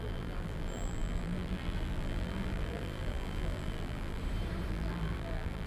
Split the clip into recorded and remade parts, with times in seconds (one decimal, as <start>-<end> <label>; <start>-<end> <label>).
0.0-4.2 remade; 4.2-4.7 recorded; 4.7-5.7 remade